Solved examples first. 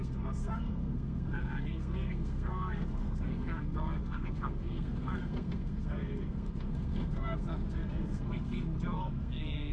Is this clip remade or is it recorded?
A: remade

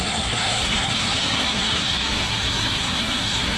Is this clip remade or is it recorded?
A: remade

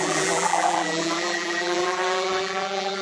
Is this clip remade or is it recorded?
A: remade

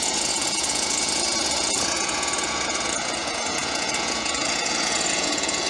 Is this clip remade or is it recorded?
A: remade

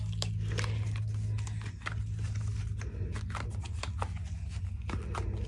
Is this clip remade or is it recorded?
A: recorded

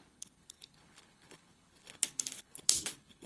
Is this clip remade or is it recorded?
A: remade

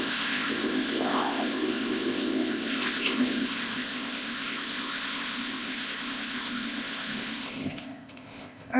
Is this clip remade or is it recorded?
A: remade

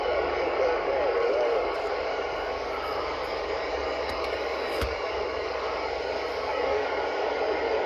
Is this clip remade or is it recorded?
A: remade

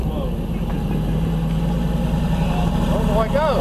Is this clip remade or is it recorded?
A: recorded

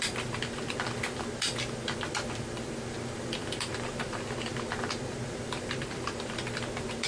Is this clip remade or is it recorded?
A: remade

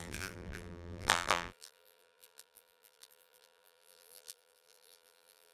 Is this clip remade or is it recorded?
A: remade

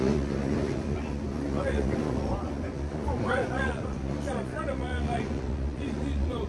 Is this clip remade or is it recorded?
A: remade